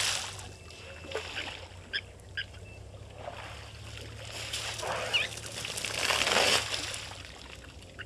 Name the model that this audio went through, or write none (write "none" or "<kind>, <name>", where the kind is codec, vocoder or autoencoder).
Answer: none